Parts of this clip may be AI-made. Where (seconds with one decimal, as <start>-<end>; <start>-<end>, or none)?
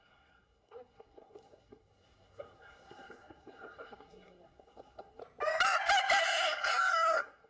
0.0-5.2; 6.2-7.5